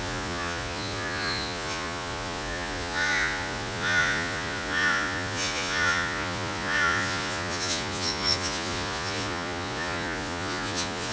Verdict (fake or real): fake